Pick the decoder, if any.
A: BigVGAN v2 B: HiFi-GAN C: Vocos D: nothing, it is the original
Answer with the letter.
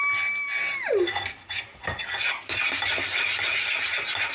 D